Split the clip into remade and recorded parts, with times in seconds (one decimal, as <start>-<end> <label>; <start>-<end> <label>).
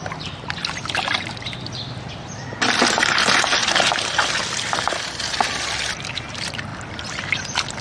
0.0-7.8 recorded